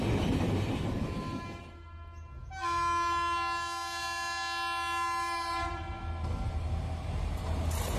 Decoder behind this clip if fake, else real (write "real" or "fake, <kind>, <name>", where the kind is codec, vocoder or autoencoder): real